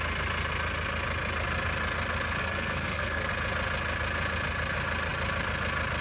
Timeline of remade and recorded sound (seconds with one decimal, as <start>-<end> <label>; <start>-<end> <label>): 0.0-2.4 recorded; 2.4-3.3 remade; 3.3-6.0 recorded